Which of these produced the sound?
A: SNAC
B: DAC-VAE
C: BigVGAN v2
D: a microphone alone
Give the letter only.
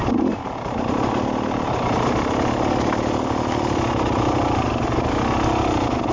D